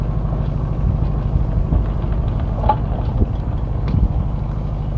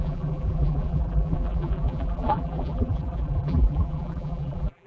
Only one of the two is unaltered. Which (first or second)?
first